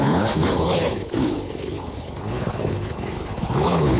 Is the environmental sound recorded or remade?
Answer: remade